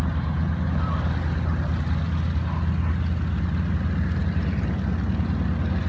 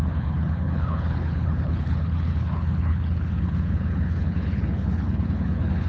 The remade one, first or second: second